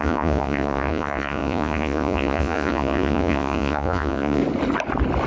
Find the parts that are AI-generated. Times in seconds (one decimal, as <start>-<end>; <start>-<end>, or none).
0.0-4.4